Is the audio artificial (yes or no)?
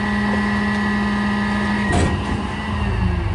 no